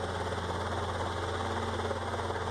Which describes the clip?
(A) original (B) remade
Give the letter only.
A